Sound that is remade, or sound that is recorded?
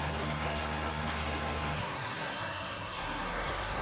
remade